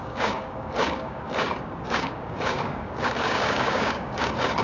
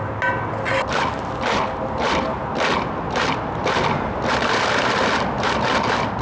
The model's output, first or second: first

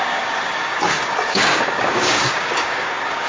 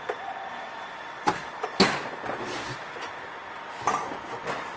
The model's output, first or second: first